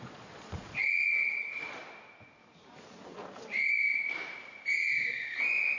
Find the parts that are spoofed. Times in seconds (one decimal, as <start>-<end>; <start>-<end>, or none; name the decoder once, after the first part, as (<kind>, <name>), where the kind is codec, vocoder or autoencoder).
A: 0.0-1.8 (vocoder, Vocos); 5.3-5.8